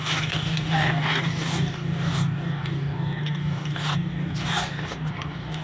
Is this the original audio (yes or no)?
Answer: no